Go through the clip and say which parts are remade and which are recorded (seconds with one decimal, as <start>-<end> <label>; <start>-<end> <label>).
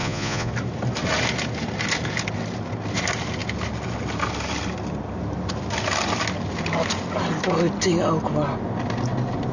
0.0-0.5 remade; 0.5-9.5 recorded